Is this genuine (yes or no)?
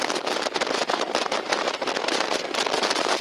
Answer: no